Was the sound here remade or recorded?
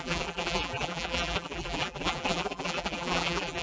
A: remade